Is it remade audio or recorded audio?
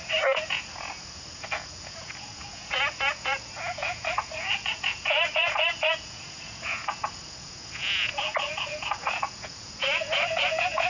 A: remade